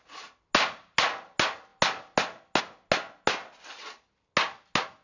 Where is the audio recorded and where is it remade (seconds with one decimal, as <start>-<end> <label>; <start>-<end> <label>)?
0.0-5.0 recorded